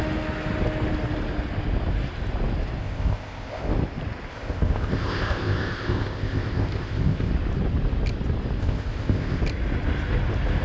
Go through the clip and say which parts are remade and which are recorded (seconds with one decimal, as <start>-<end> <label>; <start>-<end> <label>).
0.0-2.8 recorded; 2.8-3.7 remade; 3.7-4.3 recorded; 4.3-7.3 remade; 7.3-8.6 recorded; 8.6-9.4 remade; 9.4-10.6 recorded